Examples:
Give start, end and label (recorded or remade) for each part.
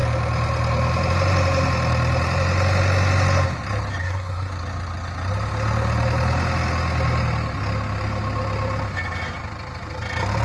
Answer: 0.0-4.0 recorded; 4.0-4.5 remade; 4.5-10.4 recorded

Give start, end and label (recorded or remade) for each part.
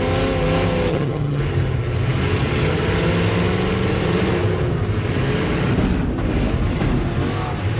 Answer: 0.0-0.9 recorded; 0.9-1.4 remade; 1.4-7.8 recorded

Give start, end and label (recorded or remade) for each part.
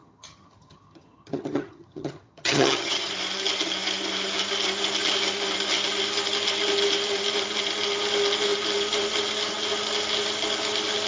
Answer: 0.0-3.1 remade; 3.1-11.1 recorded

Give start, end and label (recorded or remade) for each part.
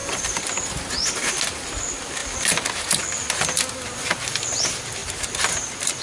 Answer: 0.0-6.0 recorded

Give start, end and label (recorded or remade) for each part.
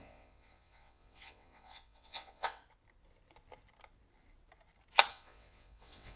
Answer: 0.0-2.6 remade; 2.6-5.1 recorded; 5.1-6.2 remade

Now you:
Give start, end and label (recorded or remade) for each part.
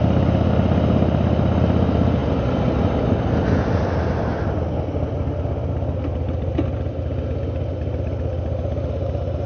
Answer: 0.0-9.5 recorded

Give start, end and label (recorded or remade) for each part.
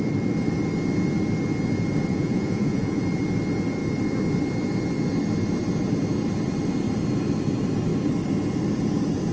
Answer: 0.0-2.1 recorded; 2.1-3.0 remade; 3.0-9.3 recorded